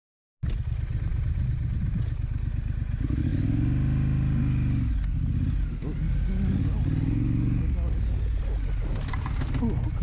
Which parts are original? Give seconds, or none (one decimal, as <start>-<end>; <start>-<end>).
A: 0.0-10.0